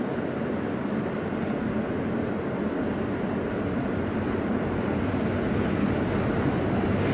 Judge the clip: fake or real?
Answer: real